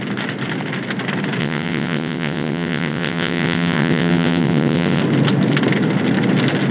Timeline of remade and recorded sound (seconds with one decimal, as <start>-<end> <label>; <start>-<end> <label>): 0.0-1.4 recorded; 1.4-5.0 remade; 5.0-6.7 recorded